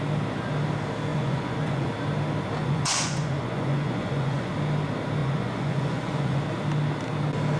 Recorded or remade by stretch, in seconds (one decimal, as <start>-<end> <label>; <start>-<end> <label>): 0.0-1.1 recorded; 1.1-1.9 remade; 1.9-2.6 recorded; 2.6-4.5 remade; 4.5-5.2 recorded; 5.2-6.4 remade; 6.4-7.6 recorded